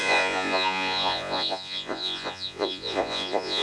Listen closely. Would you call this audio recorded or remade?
remade